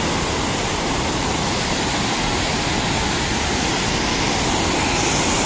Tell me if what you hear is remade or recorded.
recorded